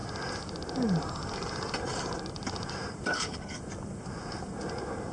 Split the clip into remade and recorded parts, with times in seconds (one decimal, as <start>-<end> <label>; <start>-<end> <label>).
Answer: 0.0-3.1 recorded; 3.1-3.6 remade; 3.6-5.1 recorded